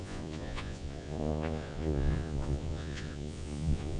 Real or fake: fake